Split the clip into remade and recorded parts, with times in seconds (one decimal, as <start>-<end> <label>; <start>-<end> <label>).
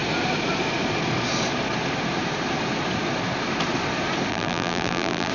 0.0-4.3 recorded; 4.3-5.3 remade